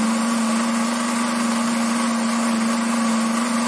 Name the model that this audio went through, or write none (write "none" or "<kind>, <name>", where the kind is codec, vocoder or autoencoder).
none